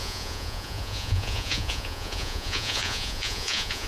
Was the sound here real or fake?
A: fake